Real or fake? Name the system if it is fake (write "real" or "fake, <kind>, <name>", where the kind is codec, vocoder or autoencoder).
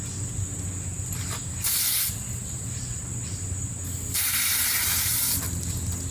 real